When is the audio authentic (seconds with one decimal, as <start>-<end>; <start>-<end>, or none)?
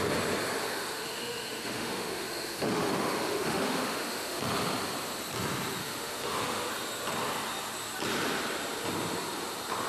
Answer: 0.0-0.6; 4.4-5.8; 6.7-9.9